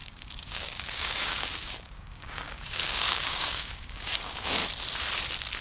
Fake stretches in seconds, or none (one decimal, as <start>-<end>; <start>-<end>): 0.0-4.6